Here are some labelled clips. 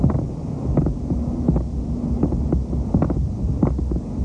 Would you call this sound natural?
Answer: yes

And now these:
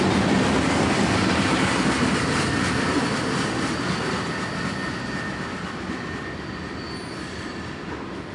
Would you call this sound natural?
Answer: yes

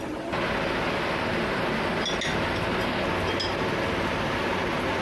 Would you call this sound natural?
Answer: yes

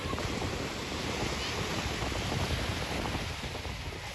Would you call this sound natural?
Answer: yes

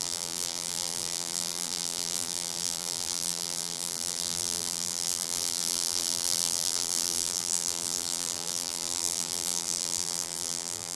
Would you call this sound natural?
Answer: no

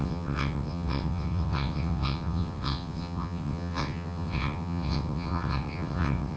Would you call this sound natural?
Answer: no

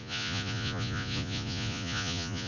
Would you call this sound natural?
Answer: no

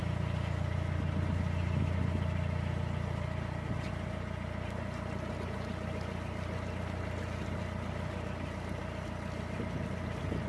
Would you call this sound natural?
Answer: yes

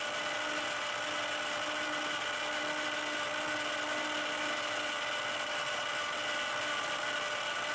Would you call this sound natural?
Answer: yes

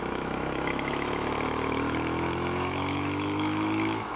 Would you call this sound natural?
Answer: no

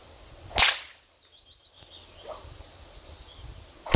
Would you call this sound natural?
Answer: yes